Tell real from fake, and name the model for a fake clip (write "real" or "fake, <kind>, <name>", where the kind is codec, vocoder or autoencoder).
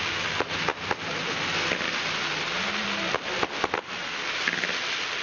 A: real